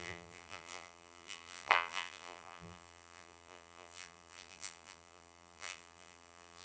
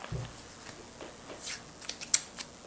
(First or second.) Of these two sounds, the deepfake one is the first